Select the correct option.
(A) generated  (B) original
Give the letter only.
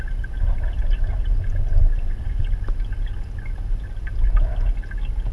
B